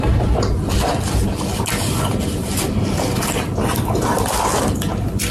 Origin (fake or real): real